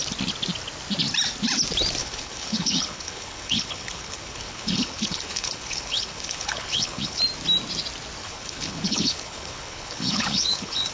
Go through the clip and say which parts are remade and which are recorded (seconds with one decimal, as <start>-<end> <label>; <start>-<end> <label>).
0.0-2.0 recorded; 2.0-7.2 remade; 7.2-8.2 recorded; 8.2-10.9 remade